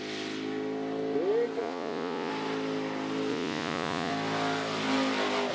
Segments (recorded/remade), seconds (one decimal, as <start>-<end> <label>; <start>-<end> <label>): 0.0-1.6 recorded; 1.6-2.3 remade; 2.3-3.3 recorded; 3.3-4.1 remade; 4.1-5.5 recorded

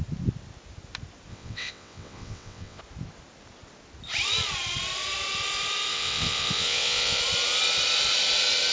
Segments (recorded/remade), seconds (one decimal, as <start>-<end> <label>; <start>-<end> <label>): 0.0-1.3 recorded; 1.3-2.8 remade; 2.8-5.9 recorded; 5.9-7.2 remade; 7.2-8.7 recorded

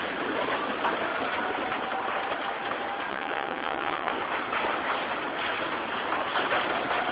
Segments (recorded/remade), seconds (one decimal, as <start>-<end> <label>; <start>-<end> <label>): 0.0-3.1 recorded; 3.1-4.1 remade; 4.1-7.1 recorded

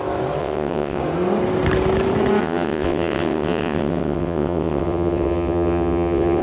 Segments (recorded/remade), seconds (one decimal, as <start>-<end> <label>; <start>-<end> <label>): 0.0-0.4 recorded; 0.4-1.0 remade; 1.0-2.4 recorded; 2.4-6.4 remade

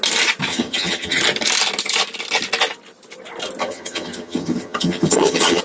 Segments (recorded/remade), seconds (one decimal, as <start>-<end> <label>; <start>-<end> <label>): 0.0-0.5 recorded; 0.5-1.2 remade; 1.2-3.6 recorded; 3.6-5.6 remade

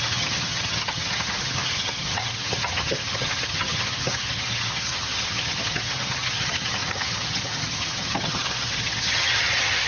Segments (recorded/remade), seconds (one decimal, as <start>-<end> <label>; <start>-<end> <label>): 0.0-9.9 remade